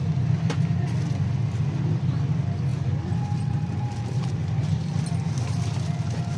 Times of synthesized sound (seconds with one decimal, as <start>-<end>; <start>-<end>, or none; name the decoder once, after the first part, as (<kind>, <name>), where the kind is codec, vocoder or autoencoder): 2.7-6.4 (vocoder, BigVGAN v2)